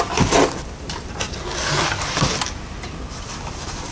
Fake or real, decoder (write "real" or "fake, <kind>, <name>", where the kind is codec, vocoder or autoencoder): real